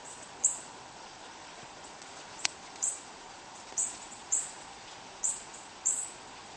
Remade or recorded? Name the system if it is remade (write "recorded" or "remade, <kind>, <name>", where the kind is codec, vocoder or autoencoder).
remade, vocoder, Vocos